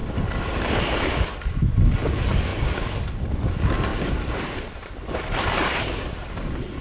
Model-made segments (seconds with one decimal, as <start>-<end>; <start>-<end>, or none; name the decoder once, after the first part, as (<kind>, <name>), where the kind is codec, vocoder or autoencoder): 2.5-3.0 (vocoder, BigVGAN v2)